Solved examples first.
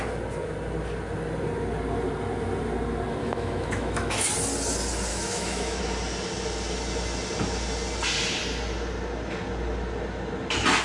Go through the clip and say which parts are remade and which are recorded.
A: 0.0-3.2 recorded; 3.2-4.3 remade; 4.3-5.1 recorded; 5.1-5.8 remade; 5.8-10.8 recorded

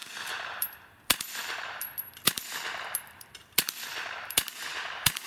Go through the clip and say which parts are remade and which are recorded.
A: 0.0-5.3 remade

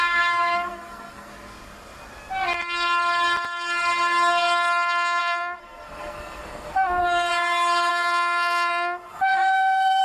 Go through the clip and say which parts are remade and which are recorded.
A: 0.0-1.3 remade; 1.3-5.2 recorded; 5.2-7.3 remade; 7.3-7.9 recorded; 7.9-10.0 remade